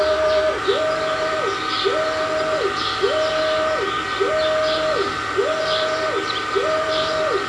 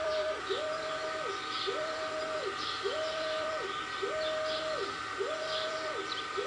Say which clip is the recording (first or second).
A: first